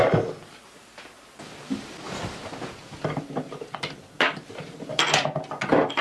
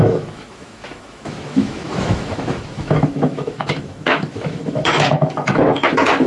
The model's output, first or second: second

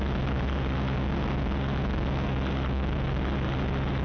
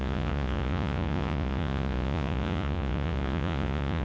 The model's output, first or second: second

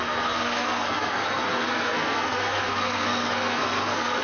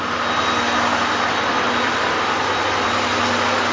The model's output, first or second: first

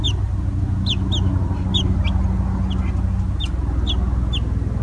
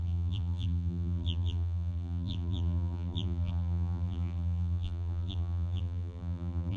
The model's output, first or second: second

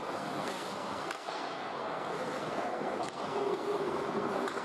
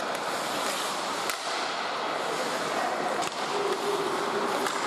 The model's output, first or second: first